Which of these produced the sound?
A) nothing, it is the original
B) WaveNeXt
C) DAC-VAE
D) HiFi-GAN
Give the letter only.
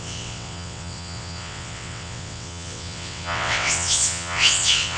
B